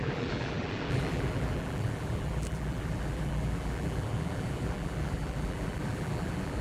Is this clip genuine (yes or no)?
no